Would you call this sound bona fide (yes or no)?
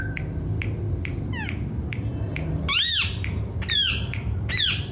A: yes